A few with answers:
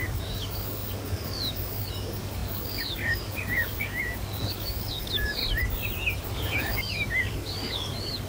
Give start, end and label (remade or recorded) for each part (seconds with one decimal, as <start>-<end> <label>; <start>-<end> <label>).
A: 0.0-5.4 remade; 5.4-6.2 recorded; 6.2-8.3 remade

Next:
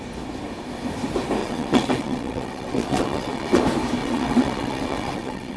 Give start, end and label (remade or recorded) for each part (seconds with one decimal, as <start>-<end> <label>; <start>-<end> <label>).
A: 0.0-1.4 recorded; 1.4-3.6 remade; 3.6-4.0 recorded; 4.0-5.6 remade

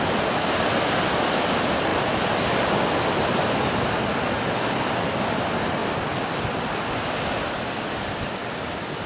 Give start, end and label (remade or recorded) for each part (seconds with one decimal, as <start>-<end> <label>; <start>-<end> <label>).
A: 0.0-9.1 recorded

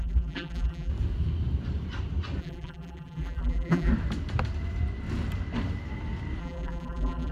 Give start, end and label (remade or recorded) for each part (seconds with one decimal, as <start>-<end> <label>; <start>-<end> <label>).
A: 0.0-0.9 remade; 0.9-2.4 recorded; 2.4-3.9 remade; 3.9-6.4 recorded; 6.4-7.3 remade

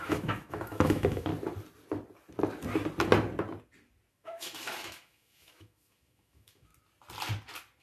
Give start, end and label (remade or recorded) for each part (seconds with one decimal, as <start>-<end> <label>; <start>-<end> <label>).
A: 0.0-1.3 remade; 1.3-4.1 recorded; 4.1-6.7 remade; 6.7-7.8 recorded

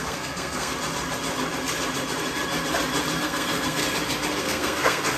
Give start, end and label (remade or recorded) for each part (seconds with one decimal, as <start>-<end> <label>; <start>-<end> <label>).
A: 0.0-0.7 remade; 0.7-3.2 recorded; 3.2-3.8 remade; 3.8-4.4 recorded; 4.4-5.2 remade